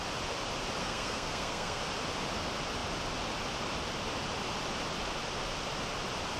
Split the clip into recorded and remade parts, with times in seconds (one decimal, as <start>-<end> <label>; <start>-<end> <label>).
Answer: 0.0-0.8 recorded; 0.8-1.8 remade; 1.8-6.4 recorded